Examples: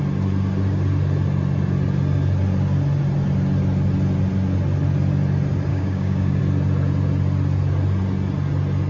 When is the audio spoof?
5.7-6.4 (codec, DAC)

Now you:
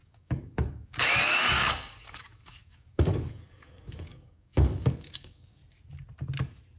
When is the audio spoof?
0.0-5.6 (codec, DAC)

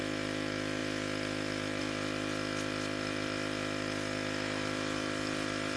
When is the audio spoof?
none

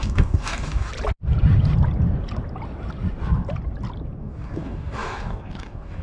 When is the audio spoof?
0.0-0.9 (codec, DAC); 4.2-6.0

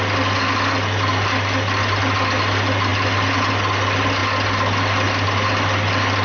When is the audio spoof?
none

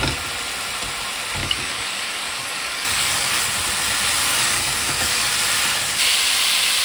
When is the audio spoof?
1.4-3.4 (codec, DAC); 4.3-5.3